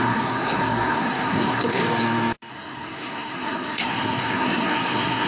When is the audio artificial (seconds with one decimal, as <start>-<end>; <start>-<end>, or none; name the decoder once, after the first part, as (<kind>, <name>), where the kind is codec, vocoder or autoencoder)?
0.0-1.8 (codec, SNAC); 2.5-5.3

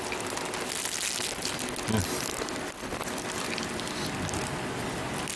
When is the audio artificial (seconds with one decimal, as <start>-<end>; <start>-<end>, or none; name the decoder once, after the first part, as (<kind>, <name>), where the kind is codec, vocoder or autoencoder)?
none

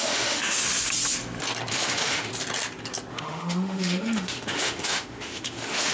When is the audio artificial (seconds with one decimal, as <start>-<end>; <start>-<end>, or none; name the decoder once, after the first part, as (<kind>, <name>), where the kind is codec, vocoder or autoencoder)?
0.0-0.6 (autoencoder, DAC-VAE); 1.7-2.3; 3.1-5.9

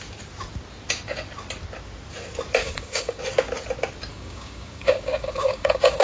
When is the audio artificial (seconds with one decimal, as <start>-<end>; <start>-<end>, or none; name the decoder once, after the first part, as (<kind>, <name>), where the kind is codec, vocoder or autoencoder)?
2.6-3.2 (codec, DAC); 4.1-6.0

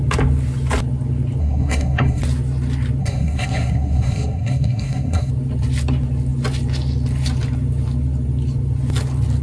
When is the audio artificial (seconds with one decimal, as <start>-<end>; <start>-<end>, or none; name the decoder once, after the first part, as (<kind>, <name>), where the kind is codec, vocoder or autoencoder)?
1.4-2.2 (codec, SNAC); 3.0-5.3